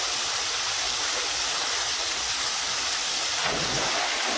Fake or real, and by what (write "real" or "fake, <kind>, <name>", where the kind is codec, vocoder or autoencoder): real